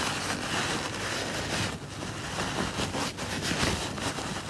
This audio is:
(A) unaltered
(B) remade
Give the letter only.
A